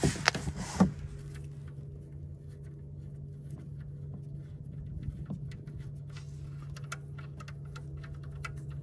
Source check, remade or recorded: recorded